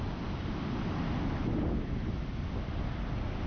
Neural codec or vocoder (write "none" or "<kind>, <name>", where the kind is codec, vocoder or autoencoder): none